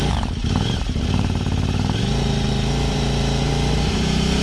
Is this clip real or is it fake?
fake